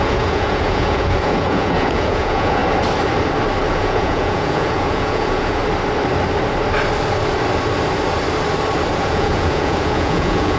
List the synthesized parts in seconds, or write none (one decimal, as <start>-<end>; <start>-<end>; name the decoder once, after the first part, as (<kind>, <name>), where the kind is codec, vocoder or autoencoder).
0.0-2.6 (vocoder, Vocos); 3.7-5.6; 8.9-10.6

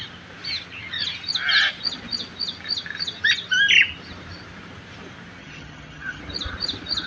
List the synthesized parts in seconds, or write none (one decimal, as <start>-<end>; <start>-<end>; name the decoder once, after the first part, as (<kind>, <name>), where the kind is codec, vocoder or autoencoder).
5.4-6.2 (vocoder, HiFi-GAN)

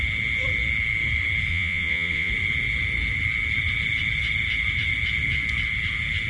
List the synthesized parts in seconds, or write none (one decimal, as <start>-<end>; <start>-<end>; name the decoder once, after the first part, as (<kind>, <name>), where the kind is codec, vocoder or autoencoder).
1.5-2.3 (vocoder, Vocos)

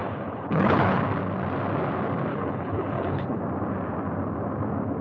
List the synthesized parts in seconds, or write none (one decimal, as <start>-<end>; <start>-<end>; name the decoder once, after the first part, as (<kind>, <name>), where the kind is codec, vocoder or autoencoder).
0.0-1.0 (codec, HILCodec); 2.3-3.4